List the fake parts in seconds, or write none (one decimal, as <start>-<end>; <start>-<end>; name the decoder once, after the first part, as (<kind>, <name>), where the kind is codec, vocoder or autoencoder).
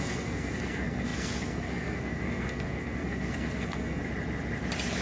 0.0-4.0 (codec, SNAC)